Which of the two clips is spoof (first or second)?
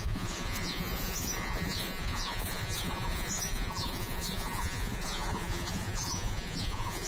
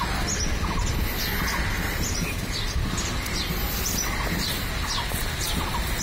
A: first